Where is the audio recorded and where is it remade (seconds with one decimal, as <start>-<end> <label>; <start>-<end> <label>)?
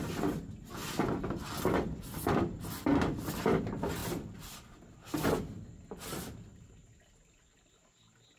0.0-0.8 recorded; 0.8-2.4 remade; 2.4-4.0 recorded; 4.0-4.9 remade; 4.9-8.4 recorded